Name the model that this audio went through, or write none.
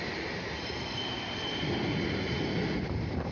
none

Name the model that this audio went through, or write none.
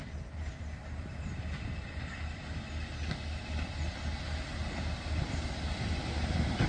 none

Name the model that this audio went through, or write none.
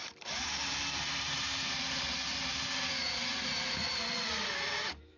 vocoder, BigVGAN v2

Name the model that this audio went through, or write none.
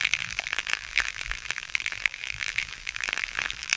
vocoder, BigVGAN v2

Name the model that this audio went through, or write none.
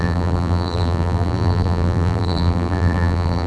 vocoder, BigVGAN v2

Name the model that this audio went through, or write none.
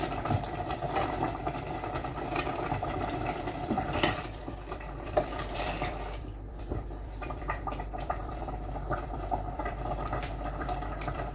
vocoder, BigVGAN v2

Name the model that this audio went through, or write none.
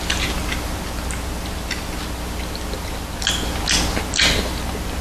none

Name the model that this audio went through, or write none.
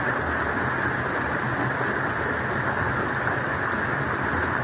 none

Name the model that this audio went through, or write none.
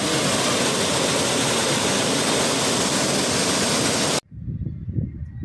none